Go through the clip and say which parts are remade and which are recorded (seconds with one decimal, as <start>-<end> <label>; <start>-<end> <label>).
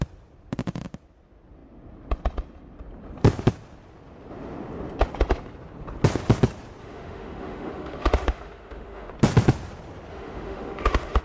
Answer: 0.0-6.8 recorded; 6.8-9.1 remade; 9.1-10.1 recorded; 10.1-11.2 remade